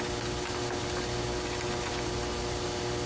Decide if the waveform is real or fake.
real